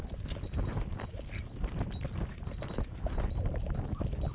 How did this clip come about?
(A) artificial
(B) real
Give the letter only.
B